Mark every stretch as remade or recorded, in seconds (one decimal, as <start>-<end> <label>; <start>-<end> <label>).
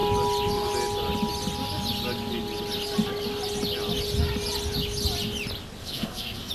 0.0-5.8 recorded; 5.8-6.5 remade